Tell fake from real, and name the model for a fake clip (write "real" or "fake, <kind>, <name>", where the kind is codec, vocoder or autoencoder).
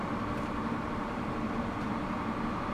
fake, vocoder, BigVGAN v2